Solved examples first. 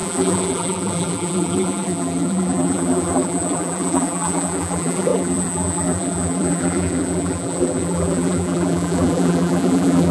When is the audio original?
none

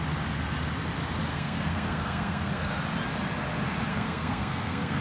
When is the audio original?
0.0-1.3; 2.8-3.9

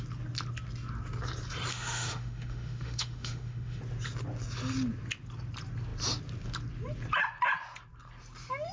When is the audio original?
0.0-1.7; 3.8-8.7

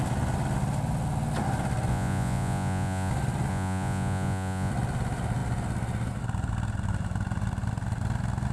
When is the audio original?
0.0-1.9; 3.1-3.5; 4.7-8.5

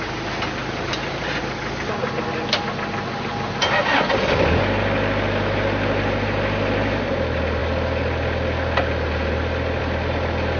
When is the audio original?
0.0-10.6

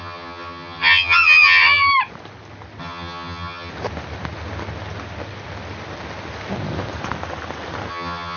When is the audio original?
1.9-2.8; 3.7-7.9

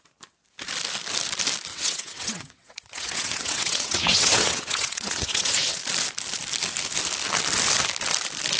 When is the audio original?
0.0-1.7; 5.8-8.6

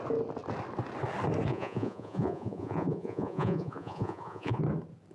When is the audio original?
0.0-1.5; 4.6-5.1